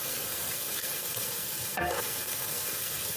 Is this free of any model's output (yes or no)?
no